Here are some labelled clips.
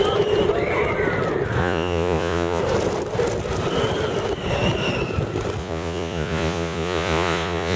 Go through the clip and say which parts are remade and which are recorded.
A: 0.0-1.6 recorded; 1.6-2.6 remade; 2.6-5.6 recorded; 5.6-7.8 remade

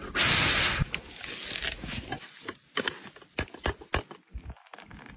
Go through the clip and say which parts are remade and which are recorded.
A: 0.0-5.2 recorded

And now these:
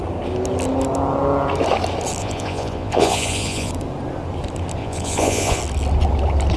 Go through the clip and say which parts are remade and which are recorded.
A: 0.0-2.2 recorded; 2.2-3.7 remade; 3.7-4.8 recorded; 4.8-5.6 remade; 5.6-6.6 recorded